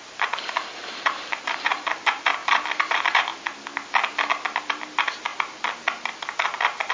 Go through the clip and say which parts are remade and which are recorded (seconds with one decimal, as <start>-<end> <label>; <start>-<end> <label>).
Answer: 0.0-2.4 remade; 2.4-2.9 recorded; 2.9-3.3 remade; 3.3-4.6 recorded; 4.6-5.3 remade; 5.3-6.9 recorded